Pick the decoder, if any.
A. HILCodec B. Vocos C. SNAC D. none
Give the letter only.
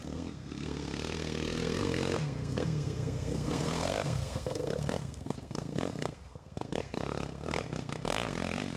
C